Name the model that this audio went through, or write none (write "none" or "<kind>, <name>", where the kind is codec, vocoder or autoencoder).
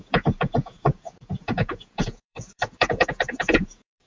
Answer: vocoder, Vocos